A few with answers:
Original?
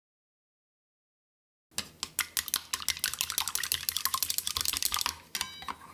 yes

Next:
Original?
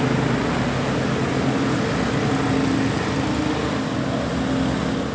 yes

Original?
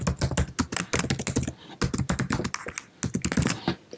yes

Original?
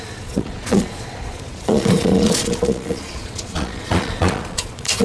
no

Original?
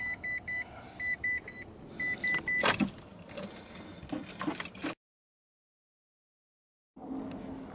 yes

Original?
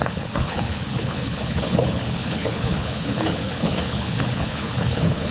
no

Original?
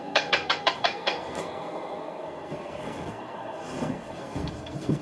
no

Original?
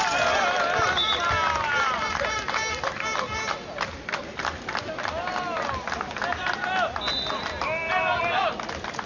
yes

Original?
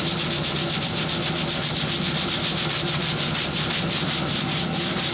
yes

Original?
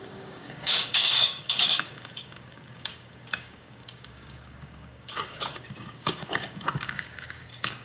no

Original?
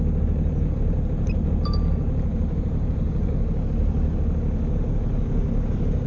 yes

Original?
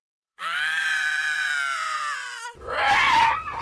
no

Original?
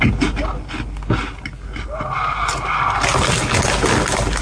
yes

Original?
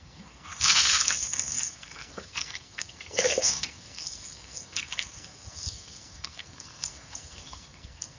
no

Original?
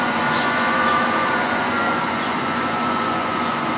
no